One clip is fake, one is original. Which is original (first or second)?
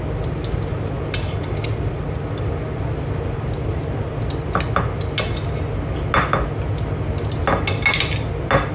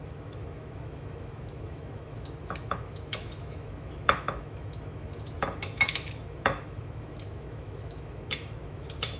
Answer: first